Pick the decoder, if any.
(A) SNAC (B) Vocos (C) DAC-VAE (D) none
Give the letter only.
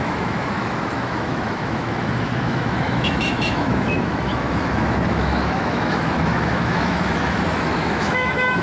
C